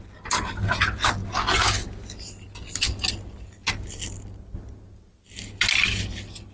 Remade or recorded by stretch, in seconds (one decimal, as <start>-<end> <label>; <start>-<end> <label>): 0.0-6.5 recorded